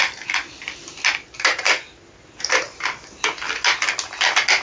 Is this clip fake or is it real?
real